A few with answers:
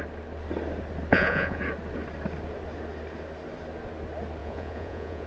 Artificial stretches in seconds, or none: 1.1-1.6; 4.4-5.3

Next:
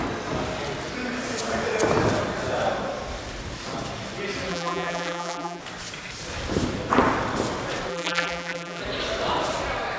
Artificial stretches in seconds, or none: 4.5-5.6; 7.9-8.8